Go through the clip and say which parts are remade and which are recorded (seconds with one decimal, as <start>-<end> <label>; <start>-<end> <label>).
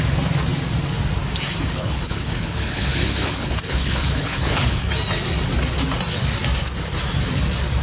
0.0-1.7 recorded; 1.7-4.9 remade; 4.9-7.8 recorded